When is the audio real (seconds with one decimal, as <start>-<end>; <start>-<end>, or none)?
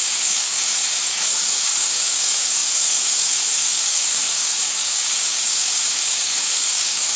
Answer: none